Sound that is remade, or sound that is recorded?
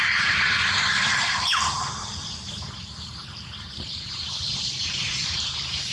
remade